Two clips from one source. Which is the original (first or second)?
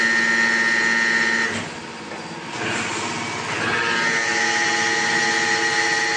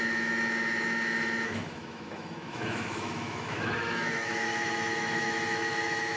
first